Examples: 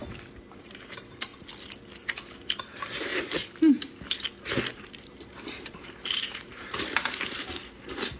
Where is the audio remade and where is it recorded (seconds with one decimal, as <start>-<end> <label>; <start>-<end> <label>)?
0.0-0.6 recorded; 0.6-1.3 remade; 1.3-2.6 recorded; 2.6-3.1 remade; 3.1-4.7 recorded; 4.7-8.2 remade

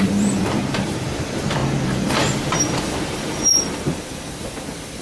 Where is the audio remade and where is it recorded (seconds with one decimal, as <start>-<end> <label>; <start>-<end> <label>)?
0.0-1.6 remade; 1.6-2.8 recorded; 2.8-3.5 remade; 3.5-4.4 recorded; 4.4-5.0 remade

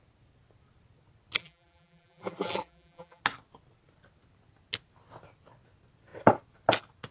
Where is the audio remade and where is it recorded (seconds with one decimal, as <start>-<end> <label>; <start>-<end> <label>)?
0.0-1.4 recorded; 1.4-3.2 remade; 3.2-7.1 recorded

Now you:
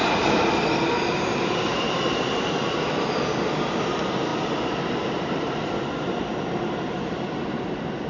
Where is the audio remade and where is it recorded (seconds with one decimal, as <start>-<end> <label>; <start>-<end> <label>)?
0.0-3.6 remade; 3.6-4.3 recorded; 4.3-7.6 remade; 7.6-8.1 recorded

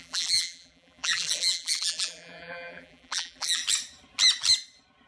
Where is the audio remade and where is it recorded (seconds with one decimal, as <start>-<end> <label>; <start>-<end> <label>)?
0.0-3.6 remade; 3.6-5.1 recorded

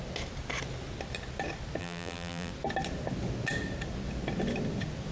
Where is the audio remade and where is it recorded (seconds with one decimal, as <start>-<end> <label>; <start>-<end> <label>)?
0.0-1.8 recorded; 1.8-2.5 remade; 2.5-5.1 recorded

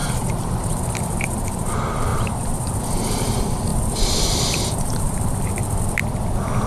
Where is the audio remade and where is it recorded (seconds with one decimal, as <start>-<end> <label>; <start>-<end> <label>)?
0.0-1.7 remade; 1.7-2.1 recorded; 2.1-2.8 remade; 2.8-3.7 recorded; 3.7-5.8 remade; 5.8-6.7 recorded